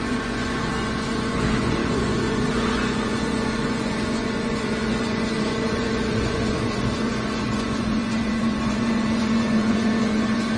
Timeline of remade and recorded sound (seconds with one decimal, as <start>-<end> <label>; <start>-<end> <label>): 0.0-10.6 remade